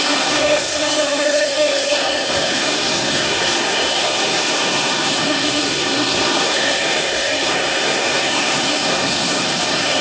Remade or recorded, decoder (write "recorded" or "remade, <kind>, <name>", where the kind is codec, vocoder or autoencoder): remade, codec, SNAC